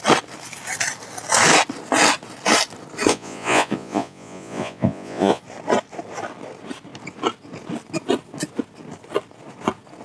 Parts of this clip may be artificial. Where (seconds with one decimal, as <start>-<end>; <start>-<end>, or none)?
3.1-5.4